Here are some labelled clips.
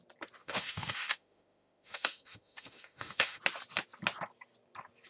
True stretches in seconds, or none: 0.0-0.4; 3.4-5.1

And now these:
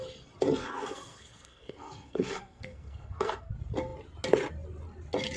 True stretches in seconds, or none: 0.0-0.6; 3.5-5.4

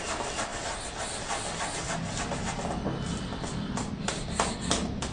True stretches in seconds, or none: 0.0-5.1